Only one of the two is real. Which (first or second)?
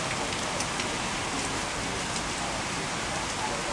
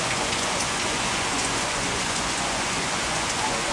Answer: first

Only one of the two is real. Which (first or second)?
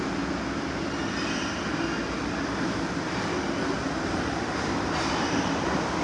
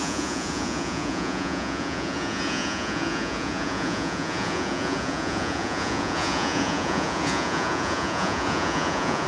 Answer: first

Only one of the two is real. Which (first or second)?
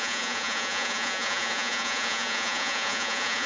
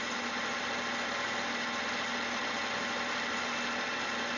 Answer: second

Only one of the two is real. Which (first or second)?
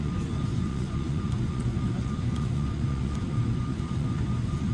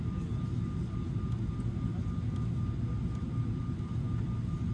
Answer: second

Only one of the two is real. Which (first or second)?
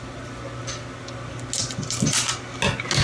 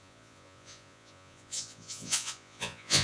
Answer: first